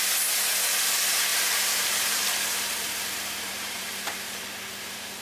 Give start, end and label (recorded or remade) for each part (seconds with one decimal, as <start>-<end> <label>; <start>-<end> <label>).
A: 0.0-1.3 recorded; 1.3-4.4 remade; 4.4-5.2 recorded